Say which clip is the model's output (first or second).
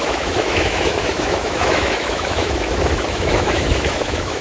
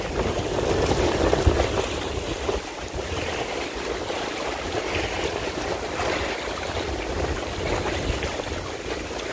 first